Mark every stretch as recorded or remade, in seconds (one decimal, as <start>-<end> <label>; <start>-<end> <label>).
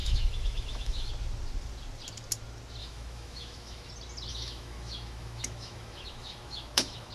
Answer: 0.0-1.1 remade; 1.1-2.8 recorded; 2.8-3.9 remade; 3.9-4.3 recorded; 4.3-7.1 remade